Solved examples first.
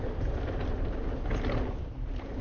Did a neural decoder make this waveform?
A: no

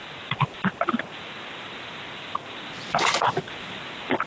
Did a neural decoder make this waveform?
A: no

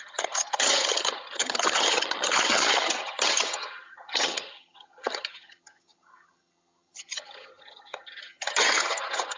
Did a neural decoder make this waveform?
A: yes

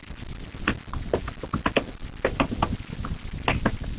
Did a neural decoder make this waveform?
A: no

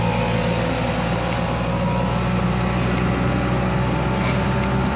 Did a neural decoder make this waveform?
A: no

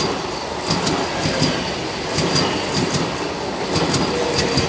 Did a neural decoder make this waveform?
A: no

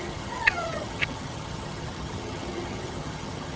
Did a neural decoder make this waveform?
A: yes